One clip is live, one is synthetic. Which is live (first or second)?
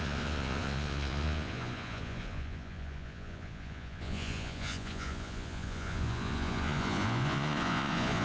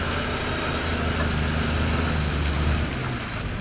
second